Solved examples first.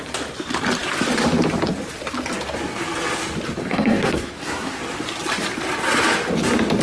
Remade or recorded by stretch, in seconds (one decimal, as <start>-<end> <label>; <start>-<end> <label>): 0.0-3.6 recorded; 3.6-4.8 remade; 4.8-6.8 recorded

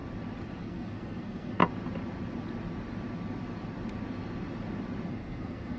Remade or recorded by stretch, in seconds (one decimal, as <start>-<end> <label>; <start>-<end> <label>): 0.0-0.6 recorded; 0.6-1.6 remade; 1.6-5.1 recorded; 5.1-5.8 remade

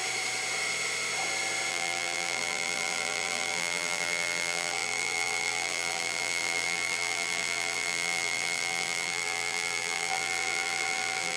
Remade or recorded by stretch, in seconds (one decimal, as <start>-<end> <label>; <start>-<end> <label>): 0.0-1.7 recorded; 1.7-11.4 remade

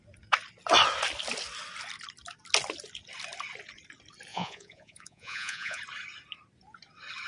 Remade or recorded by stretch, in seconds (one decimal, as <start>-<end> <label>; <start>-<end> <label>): 0.0-4.3 recorded; 4.3-5.8 remade; 5.8-7.3 recorded

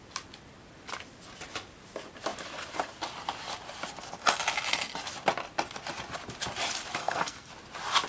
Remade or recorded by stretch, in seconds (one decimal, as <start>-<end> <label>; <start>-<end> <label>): 0.0-7.0 recorded; 7.0-7.5 remade; 7.5-8.1 recorded

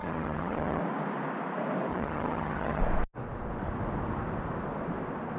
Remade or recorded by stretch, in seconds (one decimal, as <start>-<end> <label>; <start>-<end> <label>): 0.0-0.8 remade; 0.8-1.9 recorded; 1.9-2.8 remade; 2.8-5.4 recorded